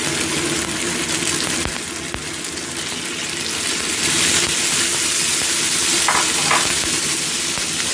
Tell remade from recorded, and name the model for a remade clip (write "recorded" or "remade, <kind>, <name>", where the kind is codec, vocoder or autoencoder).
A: recorded